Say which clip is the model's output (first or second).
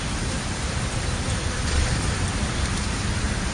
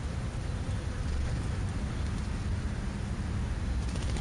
first